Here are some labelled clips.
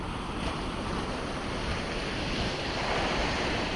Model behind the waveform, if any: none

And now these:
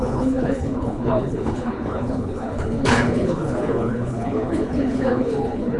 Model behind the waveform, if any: codec, HILCodec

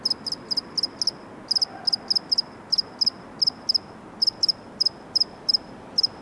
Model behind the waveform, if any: none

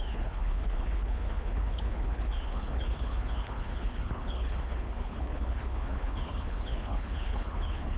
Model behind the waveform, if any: codec, HILCodec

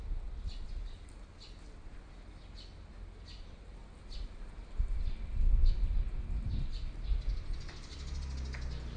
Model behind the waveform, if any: none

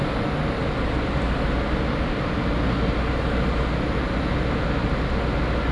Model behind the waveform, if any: none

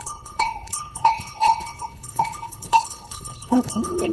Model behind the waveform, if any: codec, HILCodec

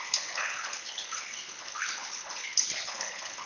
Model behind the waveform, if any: codec, HILCodec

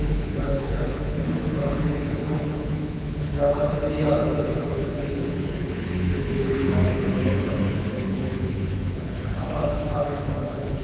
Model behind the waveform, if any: codec, HILCodec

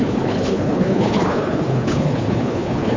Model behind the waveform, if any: codec, HILCodec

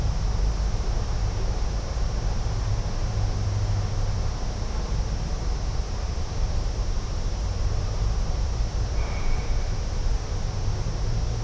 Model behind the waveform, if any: none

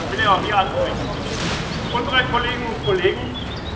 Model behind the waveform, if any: none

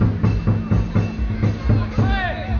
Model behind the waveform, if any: none